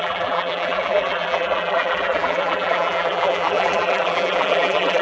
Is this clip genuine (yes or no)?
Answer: no